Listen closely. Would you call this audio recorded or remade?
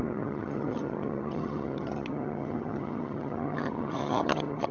remade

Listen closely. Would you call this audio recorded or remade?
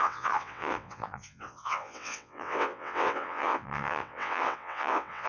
remade